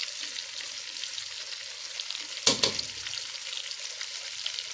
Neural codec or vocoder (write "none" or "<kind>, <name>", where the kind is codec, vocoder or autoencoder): none